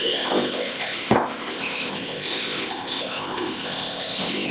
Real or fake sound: fake